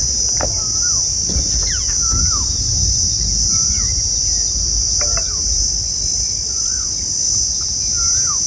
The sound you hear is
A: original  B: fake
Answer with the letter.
A